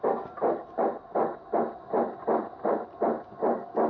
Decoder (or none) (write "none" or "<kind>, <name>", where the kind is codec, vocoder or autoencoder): none